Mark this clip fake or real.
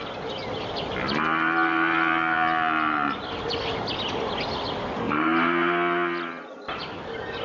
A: real